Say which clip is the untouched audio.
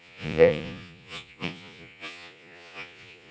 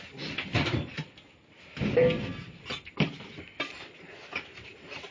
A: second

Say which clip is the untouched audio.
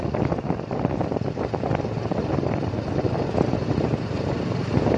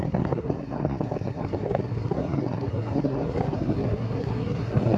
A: first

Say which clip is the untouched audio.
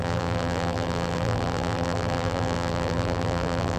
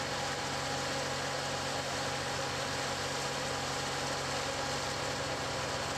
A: second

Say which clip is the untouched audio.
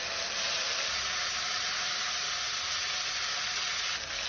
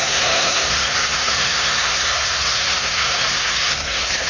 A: first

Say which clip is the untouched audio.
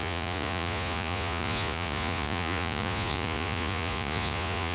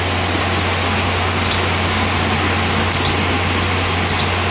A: second